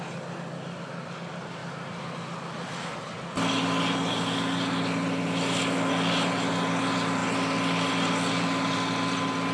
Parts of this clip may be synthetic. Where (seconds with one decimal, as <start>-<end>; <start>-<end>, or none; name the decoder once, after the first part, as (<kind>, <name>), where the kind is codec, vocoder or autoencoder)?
none